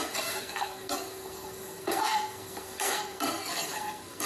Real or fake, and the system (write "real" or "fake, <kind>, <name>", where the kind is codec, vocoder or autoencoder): fake, codec, SNAC